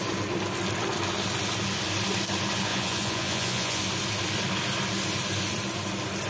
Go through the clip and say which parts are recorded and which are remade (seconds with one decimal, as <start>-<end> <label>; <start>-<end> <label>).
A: 0.0-2.7 recorded; 2.7-3.8 remade; 3.8-6.3 recorded